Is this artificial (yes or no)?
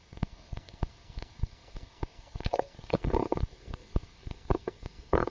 yes